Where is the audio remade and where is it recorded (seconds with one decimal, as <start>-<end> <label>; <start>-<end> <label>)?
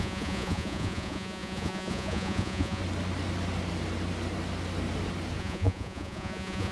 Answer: 0.0-2.8 remade; 2.8-5.4 recorded; 5.4-6.7 remade